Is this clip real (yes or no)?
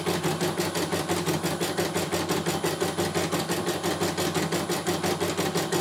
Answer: yes